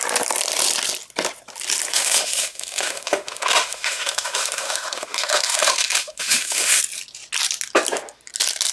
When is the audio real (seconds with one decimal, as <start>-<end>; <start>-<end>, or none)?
0.0-1.9; 6.8-8.7